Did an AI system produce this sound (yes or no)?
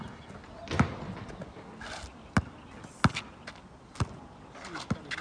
no